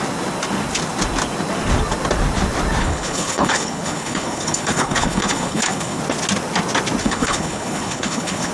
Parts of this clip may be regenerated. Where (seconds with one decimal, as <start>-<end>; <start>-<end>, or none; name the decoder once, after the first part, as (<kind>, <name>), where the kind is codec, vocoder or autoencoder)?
2.8-6.0 (codec, HILCodec); 7.0-8.5